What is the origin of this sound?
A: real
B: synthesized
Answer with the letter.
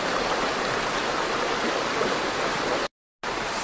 A